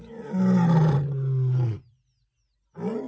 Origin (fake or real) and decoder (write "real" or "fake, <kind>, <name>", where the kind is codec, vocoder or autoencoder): real